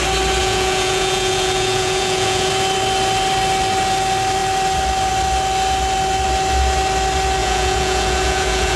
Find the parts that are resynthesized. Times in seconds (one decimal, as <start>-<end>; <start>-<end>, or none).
0.4-2.5; 7.4-8.8